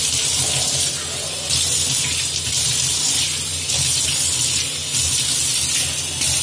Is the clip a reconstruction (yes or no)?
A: no